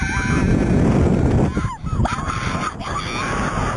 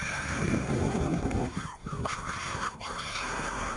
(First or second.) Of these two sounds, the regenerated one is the second